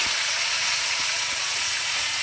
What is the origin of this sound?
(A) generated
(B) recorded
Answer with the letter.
A